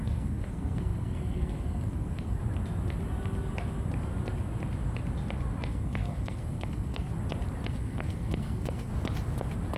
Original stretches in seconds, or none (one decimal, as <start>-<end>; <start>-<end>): 2.4-5.7; 7.1-7.7; 8.9-9.8